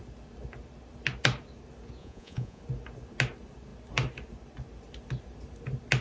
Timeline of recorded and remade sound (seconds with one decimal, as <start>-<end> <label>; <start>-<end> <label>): 0.0-2.0 recorded; 2.0-2.6 remade; 2.6-6.0 recorded